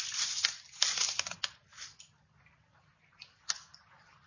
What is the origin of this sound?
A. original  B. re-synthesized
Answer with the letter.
A